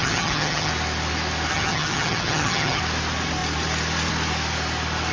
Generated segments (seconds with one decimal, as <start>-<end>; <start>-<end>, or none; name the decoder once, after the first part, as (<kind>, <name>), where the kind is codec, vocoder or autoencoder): 0.0-0.7 (vocoder, HiFi-GAN); 1.5-2.8